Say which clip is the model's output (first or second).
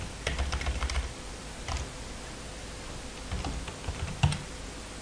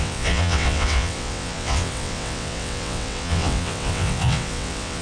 second